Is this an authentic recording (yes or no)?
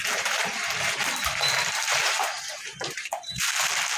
no